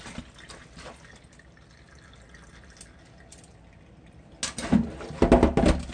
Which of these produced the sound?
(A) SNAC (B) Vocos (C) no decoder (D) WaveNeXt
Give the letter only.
C